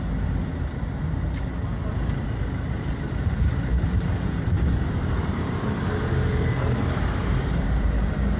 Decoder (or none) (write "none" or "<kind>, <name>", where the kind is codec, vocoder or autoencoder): vocoder, BigVGAN v2